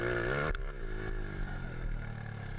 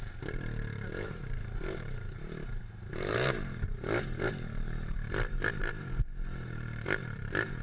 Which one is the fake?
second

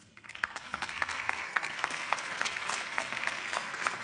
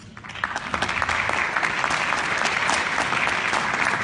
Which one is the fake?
first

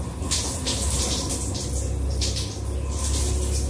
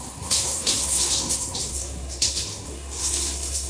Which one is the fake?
second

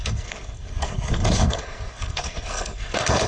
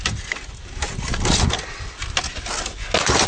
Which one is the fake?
first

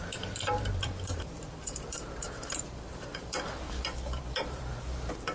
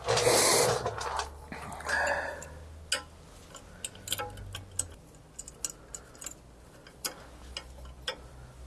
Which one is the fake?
first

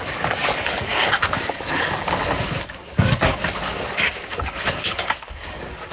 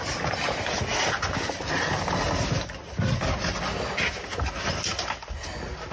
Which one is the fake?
first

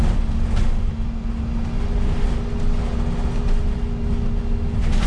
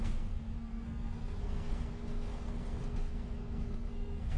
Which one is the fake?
second